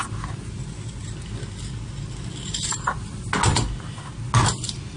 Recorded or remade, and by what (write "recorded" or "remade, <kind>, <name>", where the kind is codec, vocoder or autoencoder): recorded